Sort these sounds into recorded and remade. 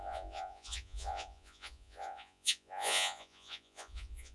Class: remade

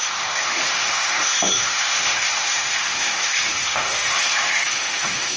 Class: remade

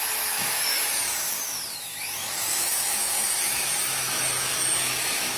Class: remade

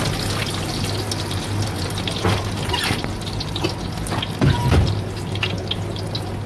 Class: recorded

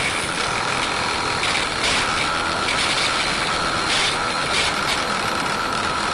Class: remade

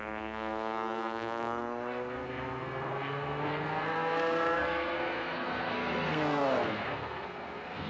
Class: remade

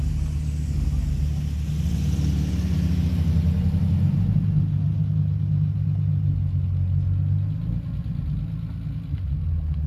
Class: recorded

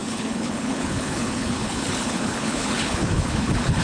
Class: remade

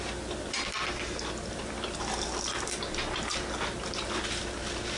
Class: recorded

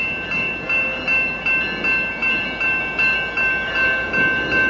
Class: recorded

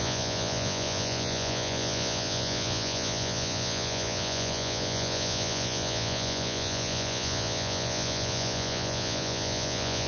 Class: remade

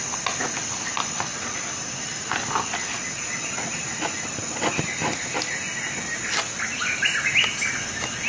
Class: recorded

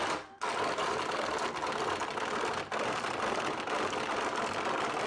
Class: recorded